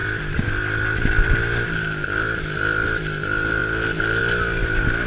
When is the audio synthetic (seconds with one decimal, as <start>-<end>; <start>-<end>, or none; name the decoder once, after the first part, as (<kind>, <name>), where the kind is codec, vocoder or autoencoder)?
none